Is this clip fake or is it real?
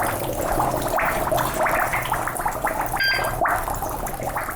fake